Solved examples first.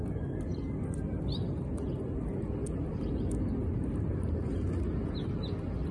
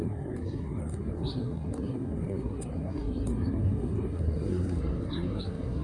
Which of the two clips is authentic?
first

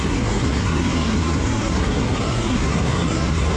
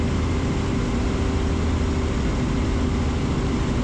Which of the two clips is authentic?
second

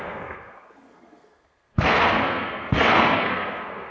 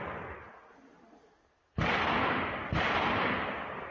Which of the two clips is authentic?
second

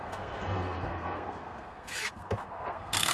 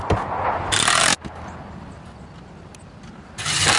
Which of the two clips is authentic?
second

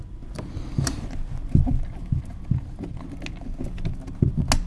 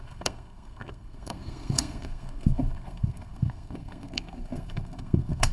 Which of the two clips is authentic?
first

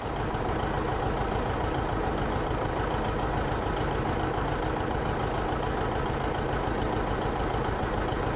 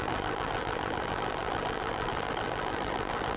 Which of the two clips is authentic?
first